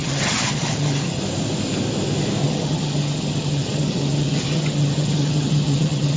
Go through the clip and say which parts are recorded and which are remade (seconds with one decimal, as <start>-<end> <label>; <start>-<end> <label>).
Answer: 0.0-1.2 remade; 1.2-2.4 recorded; 2.4-6.2 remade